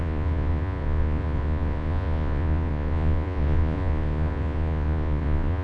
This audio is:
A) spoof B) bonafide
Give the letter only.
A